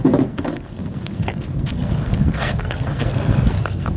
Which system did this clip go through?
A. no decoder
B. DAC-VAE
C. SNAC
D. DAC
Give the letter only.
C